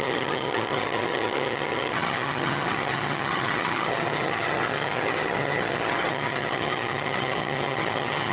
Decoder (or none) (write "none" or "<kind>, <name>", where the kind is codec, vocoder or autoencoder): vocoder, HiFi-GAN